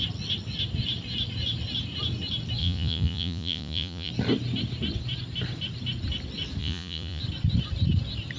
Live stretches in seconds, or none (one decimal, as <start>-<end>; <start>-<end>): 0.0-2.6; 4.1-6.6; 7.2-8.4